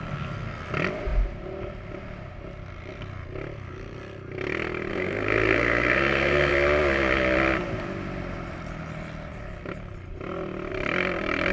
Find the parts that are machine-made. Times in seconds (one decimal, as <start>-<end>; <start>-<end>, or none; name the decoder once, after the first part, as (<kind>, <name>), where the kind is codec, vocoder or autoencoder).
4.9-6.5 (codec, SNAC)

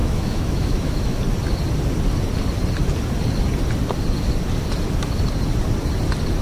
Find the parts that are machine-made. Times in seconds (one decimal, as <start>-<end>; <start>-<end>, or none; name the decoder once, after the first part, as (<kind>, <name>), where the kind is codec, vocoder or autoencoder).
0.0-1.2 (autoencoder, DAC-VAE)

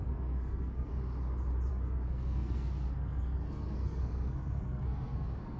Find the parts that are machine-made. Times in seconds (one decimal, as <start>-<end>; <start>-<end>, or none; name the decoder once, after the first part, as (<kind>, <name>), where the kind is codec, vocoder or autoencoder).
0.0-0.9 (codec, SNAC); 1.7-5.6

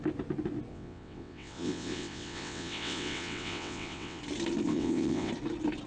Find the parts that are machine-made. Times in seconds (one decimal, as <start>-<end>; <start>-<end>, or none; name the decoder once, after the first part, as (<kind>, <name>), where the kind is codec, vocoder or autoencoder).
0.7-4.2 (vocoder, WaveNeXt); 4.7-5.3

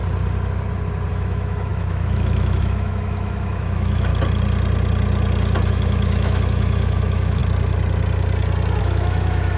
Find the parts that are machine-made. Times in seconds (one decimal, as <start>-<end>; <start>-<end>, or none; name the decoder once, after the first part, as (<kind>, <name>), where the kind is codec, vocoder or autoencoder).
1.1-4.1 (autoencoder, DAC-VAE); 5.7-7.4; 8.8-9.6